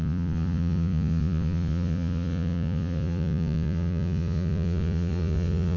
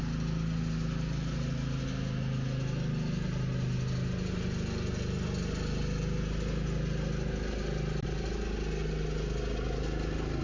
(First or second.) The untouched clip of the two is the second